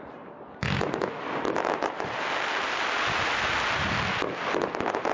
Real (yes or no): yes